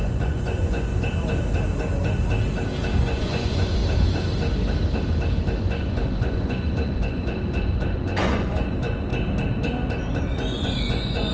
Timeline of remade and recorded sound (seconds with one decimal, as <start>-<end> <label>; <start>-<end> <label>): 0.0-0.9 remade; 0.9-3.0 recorded; 3.0-3.8 remade; 3.8-5.6 recorded; 5.6-9.1 remade; 9.1-10.2 recorded; 10.2-11.3 remade